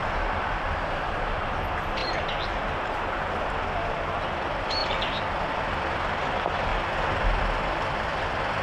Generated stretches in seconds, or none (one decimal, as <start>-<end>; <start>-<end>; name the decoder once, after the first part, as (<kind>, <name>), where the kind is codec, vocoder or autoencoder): 0.0-2.0 (vocoder, BigVGAN v2); 4.2-6.7; 7.4-8.6